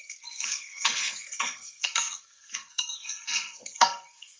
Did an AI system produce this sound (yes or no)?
yes